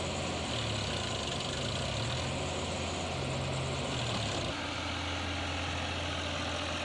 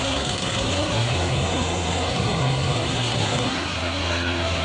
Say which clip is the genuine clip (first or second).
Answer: first